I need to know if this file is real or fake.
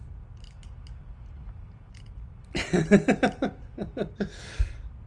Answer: real